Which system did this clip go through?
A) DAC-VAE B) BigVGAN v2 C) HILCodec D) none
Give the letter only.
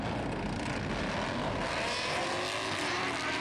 D